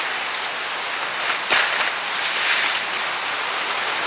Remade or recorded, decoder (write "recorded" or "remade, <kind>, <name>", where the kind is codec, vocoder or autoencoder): recorded